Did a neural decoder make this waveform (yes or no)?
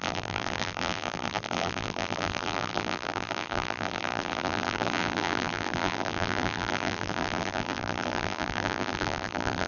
yes